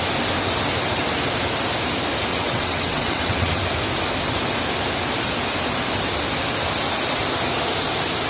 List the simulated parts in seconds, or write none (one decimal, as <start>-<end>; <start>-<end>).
2.3-3.6